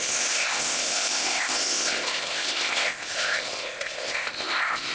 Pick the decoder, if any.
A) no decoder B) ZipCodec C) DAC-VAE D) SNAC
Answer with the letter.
B